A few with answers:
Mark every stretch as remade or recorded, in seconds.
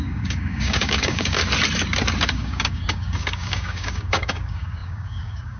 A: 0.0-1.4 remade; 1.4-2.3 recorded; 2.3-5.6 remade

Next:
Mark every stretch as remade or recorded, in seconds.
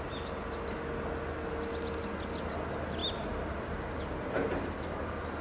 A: 0.0-5.4 recorded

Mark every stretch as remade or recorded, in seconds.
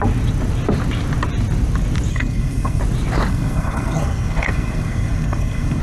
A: 0.0-2.1 recorded; 2.1-2.8 remade; 2.8-3.3 recorded; 3.3-5.8 remade